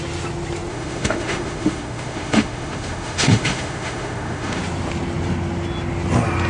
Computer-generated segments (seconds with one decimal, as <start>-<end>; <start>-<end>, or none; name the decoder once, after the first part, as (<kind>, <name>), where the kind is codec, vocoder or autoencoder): 0.7-4.6 (autoencoder, DAC-VAE)